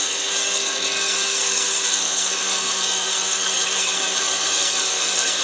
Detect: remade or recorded remade